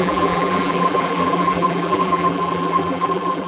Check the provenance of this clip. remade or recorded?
remade